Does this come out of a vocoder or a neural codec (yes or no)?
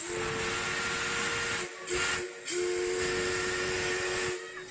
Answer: no